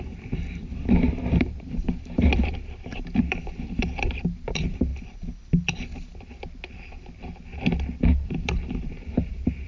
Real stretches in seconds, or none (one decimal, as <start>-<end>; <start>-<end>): 4.9-8.0